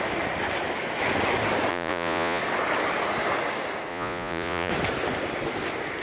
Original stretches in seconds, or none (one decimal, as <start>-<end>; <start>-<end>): 0.0-1.7; 2.4-3.9; 4.7-6.0